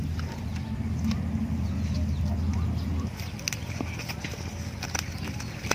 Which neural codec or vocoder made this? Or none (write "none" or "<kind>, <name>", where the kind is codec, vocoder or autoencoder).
none